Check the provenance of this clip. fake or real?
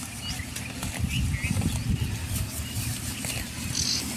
real